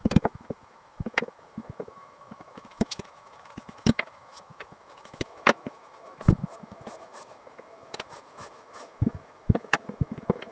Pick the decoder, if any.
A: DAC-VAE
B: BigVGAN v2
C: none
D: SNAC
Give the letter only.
A